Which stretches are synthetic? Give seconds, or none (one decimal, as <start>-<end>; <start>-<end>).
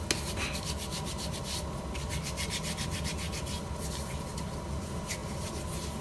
none